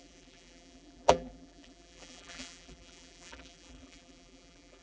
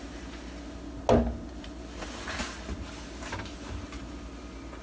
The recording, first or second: second